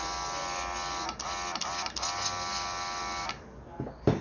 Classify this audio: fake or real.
real